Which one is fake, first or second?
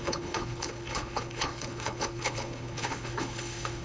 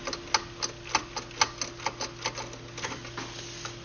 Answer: first